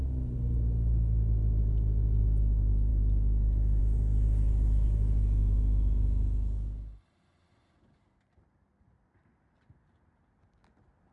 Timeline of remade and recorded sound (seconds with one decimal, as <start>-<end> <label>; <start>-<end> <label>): 0.0-11.1 recorded